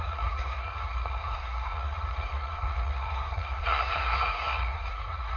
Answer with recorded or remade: remade